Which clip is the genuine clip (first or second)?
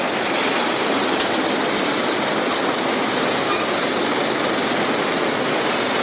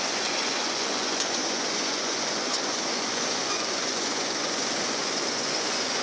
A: first